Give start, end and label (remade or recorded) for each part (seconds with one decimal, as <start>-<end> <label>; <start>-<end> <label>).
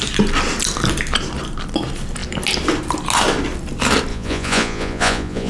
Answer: 0.0-4.1 recorded; 4.1-5.5 remade